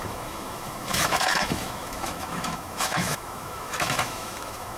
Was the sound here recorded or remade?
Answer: remade